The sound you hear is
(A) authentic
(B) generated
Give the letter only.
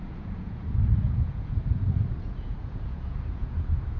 B